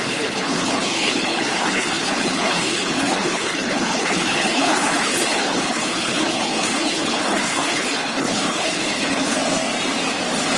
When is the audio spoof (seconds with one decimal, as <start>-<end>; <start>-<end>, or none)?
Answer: 0.0-9.4